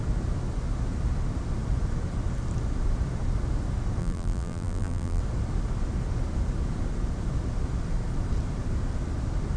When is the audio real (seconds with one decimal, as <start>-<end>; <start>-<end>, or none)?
0.0-4.0; 5.2-9.6